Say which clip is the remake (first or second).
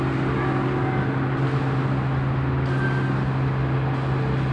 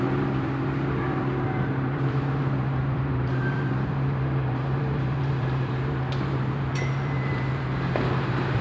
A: second